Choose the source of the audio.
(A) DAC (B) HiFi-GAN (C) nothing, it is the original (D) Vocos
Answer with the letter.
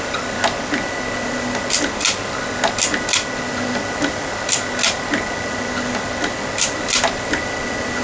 C